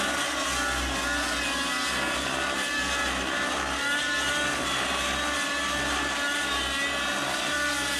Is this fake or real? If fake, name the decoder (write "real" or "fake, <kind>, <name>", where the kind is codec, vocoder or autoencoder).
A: real